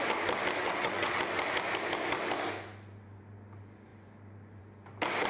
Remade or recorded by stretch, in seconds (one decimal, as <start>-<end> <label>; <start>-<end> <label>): 0.0-0.6 recorded; 0.6-1.2 remade; 1.2-5.3 recorded